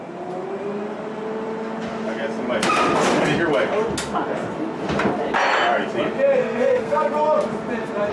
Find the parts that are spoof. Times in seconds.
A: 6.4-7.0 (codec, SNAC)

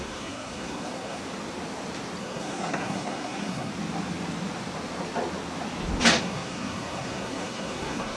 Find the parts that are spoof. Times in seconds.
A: 0.0-1.2 (codec, SNAC); 2.2-3.7; 6.2-8.2

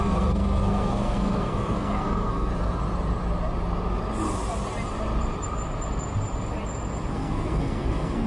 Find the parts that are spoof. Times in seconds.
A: 0.0-2.5 (codec, SNAC); 7.1-8.3

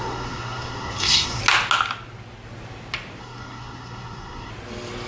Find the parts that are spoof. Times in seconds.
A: 0.0-1.4 (codec, SNAC); 3.2-4.5

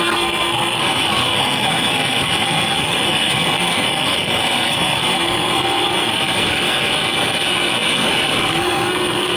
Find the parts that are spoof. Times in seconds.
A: 0.0-9.4 (codec, SNAC)

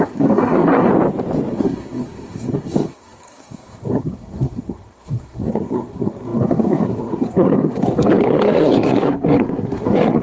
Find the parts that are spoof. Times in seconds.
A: 0.0-0.9 (codec, SNAC); 1.5-10.2

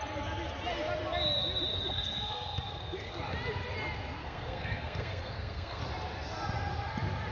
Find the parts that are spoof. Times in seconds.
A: 1.7-3.1 (codec, SNAC); 4.2-5.8